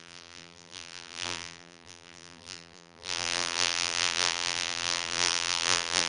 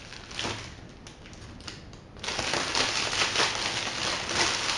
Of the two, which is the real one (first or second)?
second